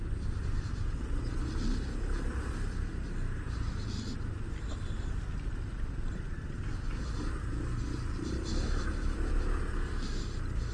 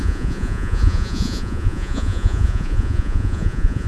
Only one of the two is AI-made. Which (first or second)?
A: second